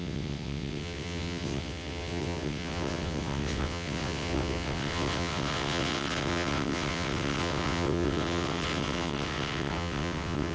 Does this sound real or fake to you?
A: fake